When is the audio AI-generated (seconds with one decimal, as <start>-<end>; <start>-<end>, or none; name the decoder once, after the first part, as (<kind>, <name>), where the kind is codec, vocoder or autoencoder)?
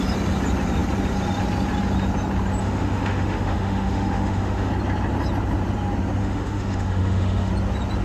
2.6-4.7 (autoencoder, DAC-VAE); 6.2-7.5